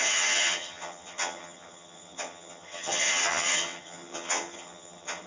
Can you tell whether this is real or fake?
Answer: fake